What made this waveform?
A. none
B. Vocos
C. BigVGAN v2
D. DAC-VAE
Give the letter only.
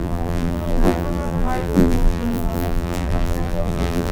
C